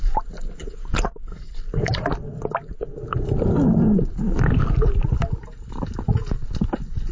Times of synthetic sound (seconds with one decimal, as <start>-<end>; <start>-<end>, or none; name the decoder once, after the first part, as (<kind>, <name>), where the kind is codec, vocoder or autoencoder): none